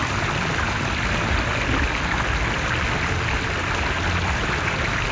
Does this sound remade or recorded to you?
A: recorded